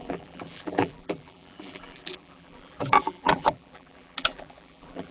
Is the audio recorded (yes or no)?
no